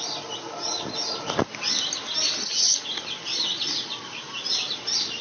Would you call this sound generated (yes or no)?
no